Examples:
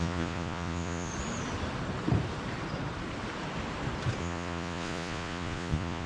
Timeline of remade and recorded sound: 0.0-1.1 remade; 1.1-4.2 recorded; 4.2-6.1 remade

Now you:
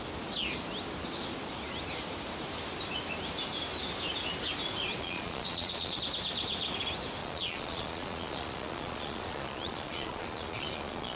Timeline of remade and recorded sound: 0.0-5.0 recorded; 5.0-6.0 remade; 6.0-7.2 recorded; 7.2-11.2 remade

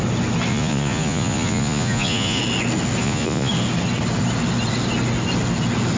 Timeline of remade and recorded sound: 0.0-0.5 recorded; 0.5-2.4 remade; 2.4-3.0 recorded; 3.0-3.5 remade; 3.5-6.0 recorded

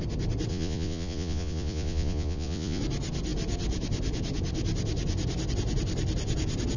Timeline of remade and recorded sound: 0.0-0.5 recorded; 0.5-2.8 remade; 2.8-6.8 recorded

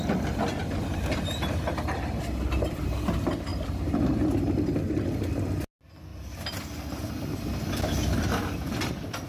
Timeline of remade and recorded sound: 0.0-0.6 recorded; 0.6-1.2 remade; 1.2-3.5 recorded; 3.5-4.4 remade; 4.4-6.1 recorded; 6.1-9.3 remade